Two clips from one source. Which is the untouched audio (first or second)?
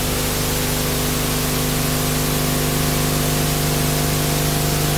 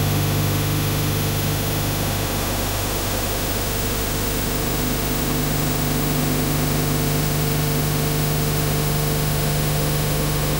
first